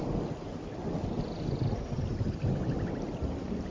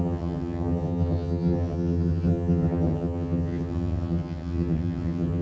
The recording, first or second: first